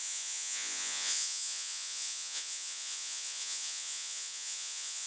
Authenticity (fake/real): fake